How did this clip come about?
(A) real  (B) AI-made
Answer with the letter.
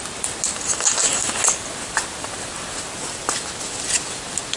A